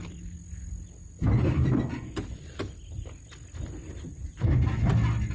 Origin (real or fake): real